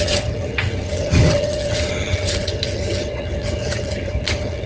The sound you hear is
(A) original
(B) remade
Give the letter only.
B